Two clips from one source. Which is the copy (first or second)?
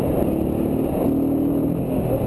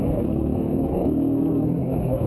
second